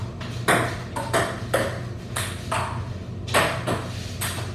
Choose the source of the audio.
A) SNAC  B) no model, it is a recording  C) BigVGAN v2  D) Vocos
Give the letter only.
B